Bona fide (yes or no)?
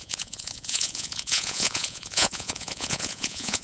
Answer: no